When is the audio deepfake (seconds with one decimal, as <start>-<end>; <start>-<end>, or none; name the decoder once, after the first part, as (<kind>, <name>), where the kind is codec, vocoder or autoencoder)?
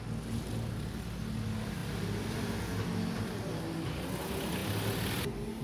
none